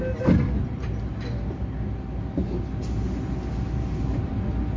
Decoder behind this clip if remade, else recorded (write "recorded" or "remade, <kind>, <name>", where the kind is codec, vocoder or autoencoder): recorded